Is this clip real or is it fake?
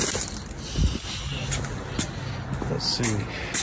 real